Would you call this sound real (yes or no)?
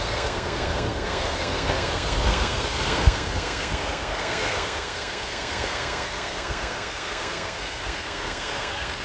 no